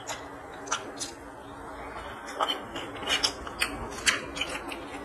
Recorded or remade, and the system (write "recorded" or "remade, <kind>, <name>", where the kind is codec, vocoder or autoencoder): recorded